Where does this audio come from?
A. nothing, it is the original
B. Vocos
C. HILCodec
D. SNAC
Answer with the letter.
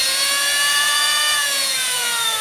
B